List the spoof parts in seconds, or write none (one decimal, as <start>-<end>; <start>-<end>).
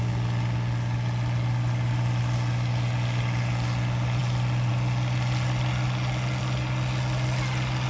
none